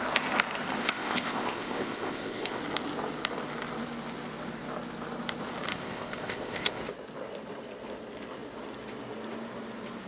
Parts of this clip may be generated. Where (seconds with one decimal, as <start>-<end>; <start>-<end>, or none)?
0.8-2.6; 5.7-6.8